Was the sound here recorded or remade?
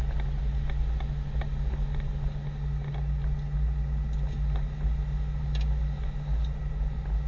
recorded